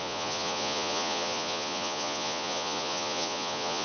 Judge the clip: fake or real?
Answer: fake